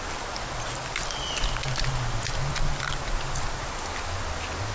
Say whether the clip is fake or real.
real